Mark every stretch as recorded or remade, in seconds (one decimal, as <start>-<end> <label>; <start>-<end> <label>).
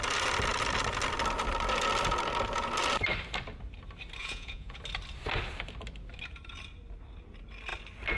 0.0-4.2 recorded; 4.2-4.8 remade; 4.8-8.2 recorded